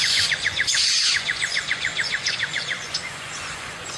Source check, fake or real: fake